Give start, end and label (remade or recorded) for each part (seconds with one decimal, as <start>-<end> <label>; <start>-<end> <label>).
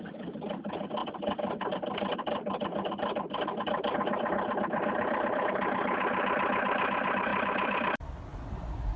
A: 0.0-1.0 recorded; 1.0-5.5 remade; 5.5-7.3 recorded; 7.3-9.0 remade